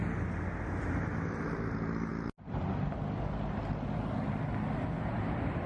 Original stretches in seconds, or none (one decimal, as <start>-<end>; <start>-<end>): 0.0-5.7